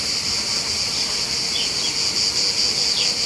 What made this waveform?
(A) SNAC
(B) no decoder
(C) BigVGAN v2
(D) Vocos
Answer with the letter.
B